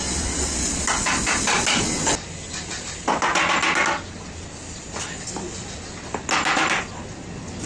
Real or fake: real